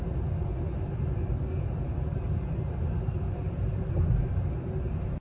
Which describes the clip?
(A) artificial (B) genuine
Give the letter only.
B